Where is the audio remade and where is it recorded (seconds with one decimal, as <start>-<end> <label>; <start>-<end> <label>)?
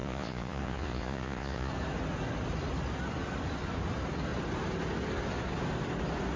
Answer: 0.0-1.7 remade; 1.7-6.4 recorded